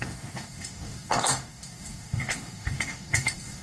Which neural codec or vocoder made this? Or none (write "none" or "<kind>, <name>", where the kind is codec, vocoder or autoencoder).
codec, DAC